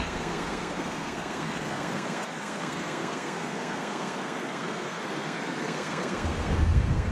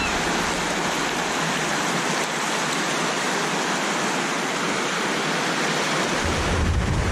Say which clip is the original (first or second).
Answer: second